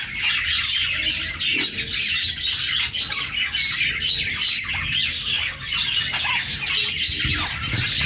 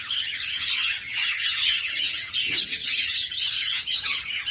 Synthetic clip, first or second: second